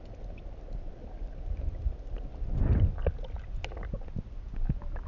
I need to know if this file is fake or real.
real